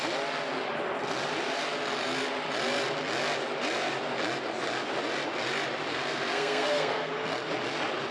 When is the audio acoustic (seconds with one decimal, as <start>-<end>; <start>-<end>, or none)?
0.0-5.9; 7.1-8.1